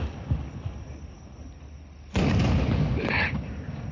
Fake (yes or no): no